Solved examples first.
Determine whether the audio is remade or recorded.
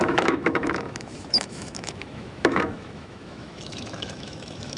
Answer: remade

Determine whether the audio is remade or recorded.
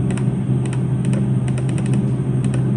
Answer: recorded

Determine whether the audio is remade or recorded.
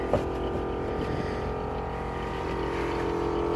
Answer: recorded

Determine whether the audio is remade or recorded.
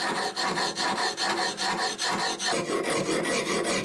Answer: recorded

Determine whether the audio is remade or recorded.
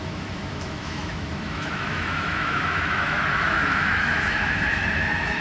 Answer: remade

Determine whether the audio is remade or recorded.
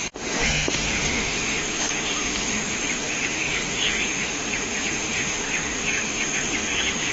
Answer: remade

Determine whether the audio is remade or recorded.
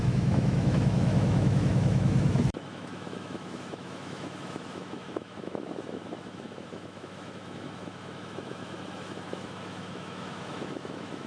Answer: remade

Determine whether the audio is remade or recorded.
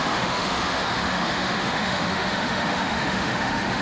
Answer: remade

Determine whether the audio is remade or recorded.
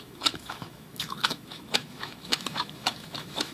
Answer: remade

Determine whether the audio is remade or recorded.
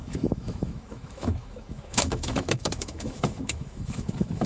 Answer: remade